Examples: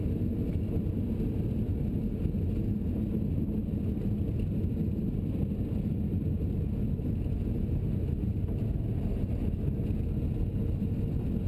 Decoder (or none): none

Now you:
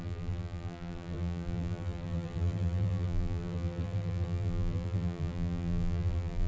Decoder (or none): vocoder, BigVGAN v2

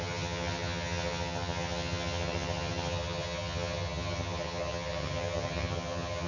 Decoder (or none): vocoder, HiFi-GAN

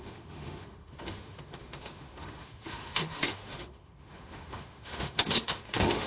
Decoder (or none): autoencoder, DAC-VAE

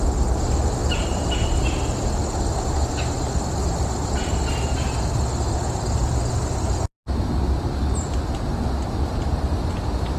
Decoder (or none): none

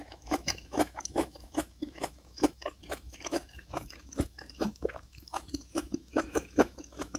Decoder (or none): autoencoder, DAC-VAE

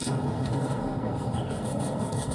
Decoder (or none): codec, SNAC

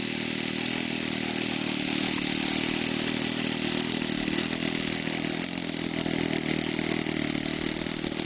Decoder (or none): none